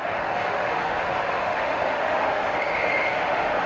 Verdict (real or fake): fake